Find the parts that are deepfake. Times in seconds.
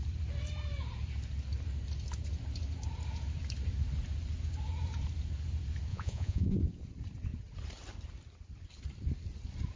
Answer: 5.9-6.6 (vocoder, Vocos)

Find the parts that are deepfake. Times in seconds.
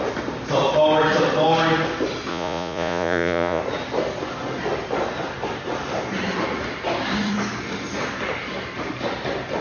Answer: 2.3-3.6 (vocoder, Vocos)